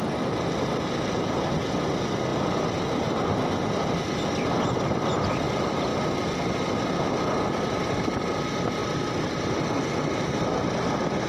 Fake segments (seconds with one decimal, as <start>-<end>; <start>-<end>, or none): none